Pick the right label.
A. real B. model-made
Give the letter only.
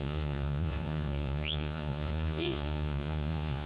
B